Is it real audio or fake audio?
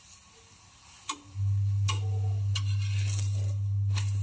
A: real